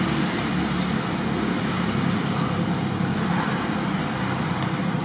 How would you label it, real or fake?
real